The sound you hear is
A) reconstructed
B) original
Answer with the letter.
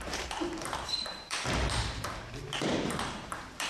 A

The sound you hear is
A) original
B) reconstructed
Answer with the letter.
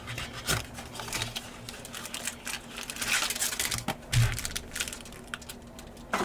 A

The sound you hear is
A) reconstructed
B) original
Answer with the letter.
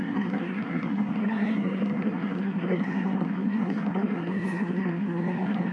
A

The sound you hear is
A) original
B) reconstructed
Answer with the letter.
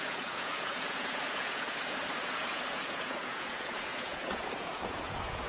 B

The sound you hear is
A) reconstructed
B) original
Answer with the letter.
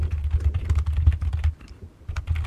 B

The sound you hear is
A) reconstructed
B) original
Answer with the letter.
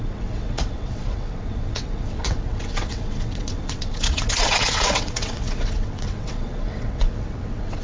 A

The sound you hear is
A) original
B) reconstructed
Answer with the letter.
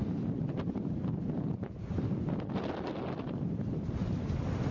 A